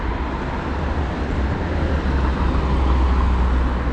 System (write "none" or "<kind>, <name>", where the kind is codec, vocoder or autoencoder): none